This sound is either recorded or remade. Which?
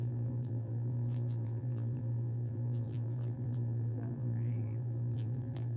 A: remade